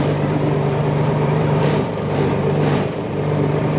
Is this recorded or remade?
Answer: remade